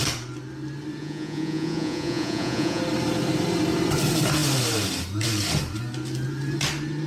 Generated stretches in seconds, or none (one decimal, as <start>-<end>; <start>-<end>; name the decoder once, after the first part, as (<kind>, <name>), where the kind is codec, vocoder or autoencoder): 1.0-2.8 (vocoder, Vocos)